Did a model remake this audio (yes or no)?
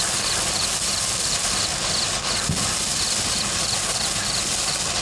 no